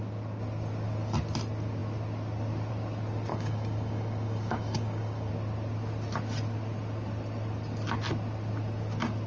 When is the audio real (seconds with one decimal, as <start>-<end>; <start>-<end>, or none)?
0.0-3.3; 5.3-9.3